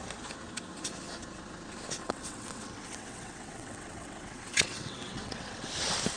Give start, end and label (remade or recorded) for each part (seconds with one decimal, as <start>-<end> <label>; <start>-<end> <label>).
0.0-2.0 recorded; 2.0-5.7 remade; 5.7-6.2 recorded